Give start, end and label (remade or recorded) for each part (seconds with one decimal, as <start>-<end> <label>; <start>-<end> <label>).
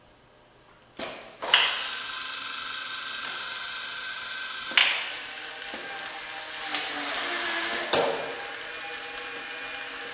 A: 0.0-10.1 recorded